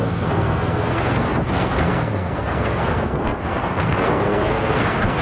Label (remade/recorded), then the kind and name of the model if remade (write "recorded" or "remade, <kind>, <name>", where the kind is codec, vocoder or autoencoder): remade, codec, SNAC